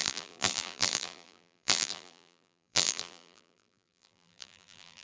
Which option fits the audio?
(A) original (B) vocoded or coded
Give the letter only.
B